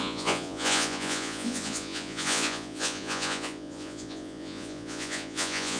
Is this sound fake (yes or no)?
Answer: yes